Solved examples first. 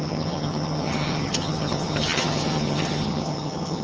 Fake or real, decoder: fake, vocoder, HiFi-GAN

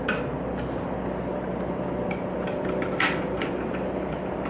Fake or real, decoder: real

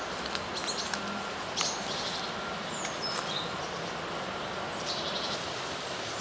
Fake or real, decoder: real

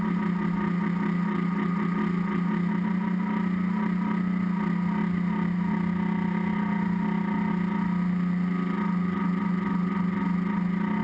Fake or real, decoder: real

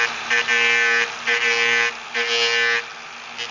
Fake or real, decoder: real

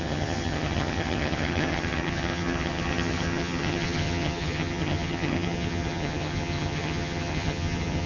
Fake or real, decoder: fake, vocoder, HiFi-GAN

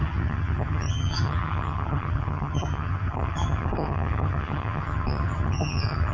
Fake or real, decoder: fake, vocoder, HiFi-GAN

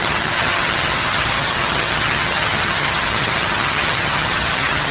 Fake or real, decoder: fake, vocoder, HiFi-GAN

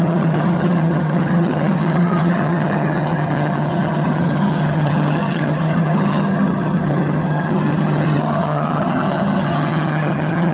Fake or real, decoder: fake, vocoder, HiFi-GAN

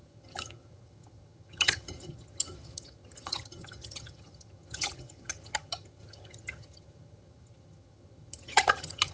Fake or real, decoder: fake, vocoder, HiFi-GAN